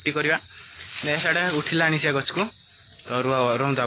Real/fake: real